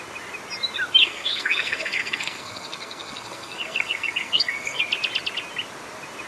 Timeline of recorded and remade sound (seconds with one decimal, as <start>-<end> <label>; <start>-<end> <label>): 0.0-1.0 recorded; 1.0-4.8 remade; 4.8-6.3 recorded